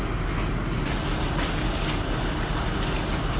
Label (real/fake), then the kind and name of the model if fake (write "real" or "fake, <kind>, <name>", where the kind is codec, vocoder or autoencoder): real